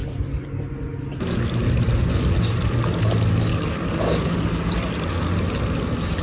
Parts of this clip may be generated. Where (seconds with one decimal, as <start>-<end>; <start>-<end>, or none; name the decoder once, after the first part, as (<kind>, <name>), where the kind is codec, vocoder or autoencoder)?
3.5-4.7 (codec, DAC)